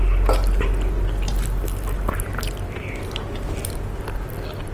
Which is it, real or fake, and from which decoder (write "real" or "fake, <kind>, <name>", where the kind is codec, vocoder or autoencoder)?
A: real